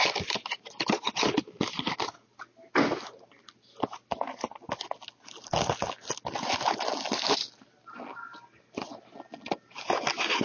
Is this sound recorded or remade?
recorded